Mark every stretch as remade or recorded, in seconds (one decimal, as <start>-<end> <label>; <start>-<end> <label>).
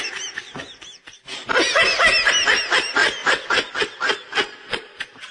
0.0-3.2 recorded; 3.2-3.7 remade; 3.7-5.3 recorded